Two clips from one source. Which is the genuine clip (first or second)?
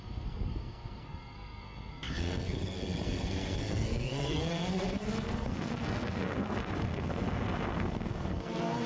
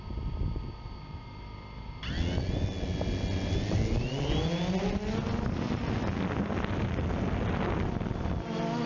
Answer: second